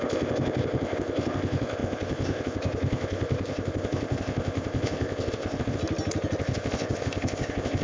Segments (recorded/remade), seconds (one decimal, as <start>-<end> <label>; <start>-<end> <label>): 0.0-5.8 remade; 5.8-6.4 recorded; 6.4-7.8 remade